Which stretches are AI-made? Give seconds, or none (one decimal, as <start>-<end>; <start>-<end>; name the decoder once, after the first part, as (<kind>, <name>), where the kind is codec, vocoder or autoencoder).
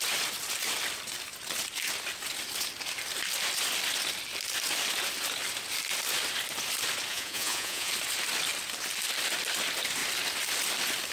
7.1-7.9 (vocoder, Vocos)